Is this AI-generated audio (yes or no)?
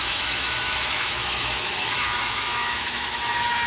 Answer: yes